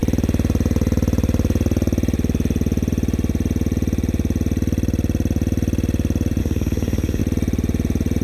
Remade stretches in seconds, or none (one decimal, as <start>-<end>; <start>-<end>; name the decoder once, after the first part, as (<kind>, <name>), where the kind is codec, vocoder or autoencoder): 6.4-7.2 (autoencoder, DAC-VAE)